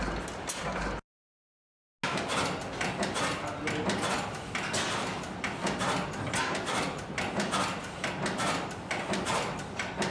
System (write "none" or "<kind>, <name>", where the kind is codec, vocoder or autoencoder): none